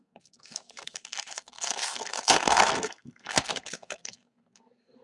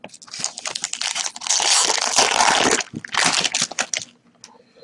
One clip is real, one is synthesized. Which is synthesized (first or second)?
first